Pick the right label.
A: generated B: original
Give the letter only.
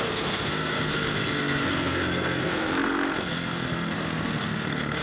A